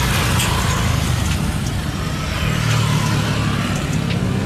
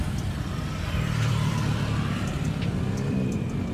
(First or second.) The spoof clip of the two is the second